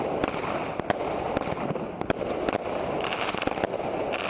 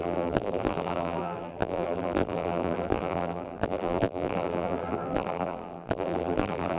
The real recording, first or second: first